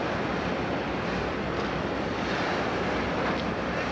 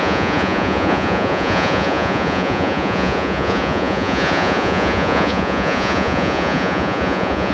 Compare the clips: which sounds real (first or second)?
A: first